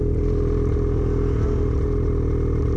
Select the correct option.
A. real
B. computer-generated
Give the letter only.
A